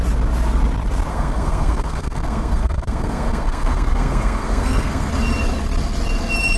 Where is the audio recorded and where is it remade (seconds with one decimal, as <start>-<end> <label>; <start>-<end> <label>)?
0.0-1.1 recorded; 1.1-5.1 remade; 5.1-6.6 recorded